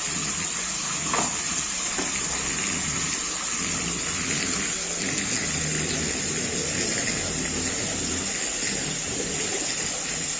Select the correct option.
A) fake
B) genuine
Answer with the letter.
B